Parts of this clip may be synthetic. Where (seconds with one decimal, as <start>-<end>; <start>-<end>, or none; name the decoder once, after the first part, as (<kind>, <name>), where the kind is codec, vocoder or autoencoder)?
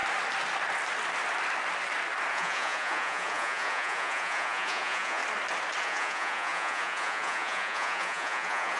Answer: 2.3-5.2 (vocoder, Vocos); 5.8-8.8